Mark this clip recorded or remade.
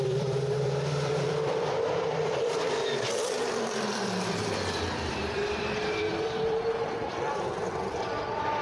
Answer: remade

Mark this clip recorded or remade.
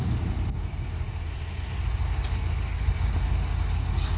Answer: recorded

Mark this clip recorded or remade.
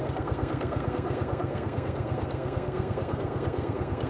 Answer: remade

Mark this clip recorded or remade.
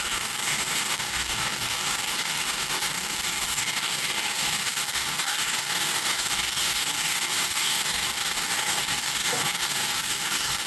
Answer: remade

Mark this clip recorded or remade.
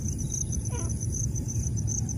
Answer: remade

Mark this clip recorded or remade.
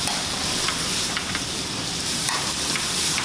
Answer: remade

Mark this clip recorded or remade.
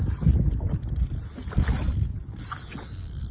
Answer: recorded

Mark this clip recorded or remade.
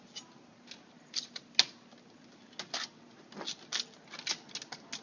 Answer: recorded